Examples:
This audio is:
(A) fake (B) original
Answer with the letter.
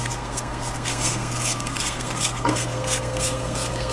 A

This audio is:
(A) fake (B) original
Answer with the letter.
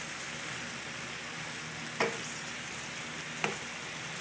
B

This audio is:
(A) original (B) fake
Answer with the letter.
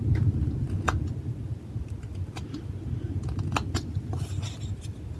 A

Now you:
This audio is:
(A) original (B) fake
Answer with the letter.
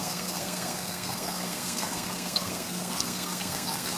B